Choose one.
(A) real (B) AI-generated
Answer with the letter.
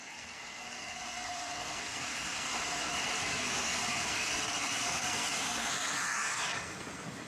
B